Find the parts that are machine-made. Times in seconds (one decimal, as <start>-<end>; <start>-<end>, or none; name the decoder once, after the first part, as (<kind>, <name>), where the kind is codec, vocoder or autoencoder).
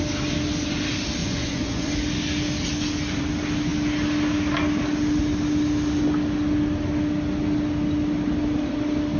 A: 1.2-1.9 (vocoder, Vocos)